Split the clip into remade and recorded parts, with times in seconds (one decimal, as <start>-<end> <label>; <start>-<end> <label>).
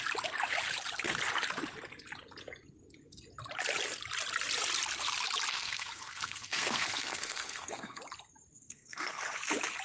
0.0-5.5 recorded; 5.5-8.0 remade; 8.0-8.5 recorded; 8.5-9.2 remade; 9.2-9.8 recorded